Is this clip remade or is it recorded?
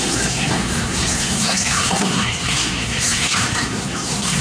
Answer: remade